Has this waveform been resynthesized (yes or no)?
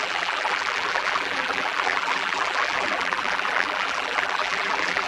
yes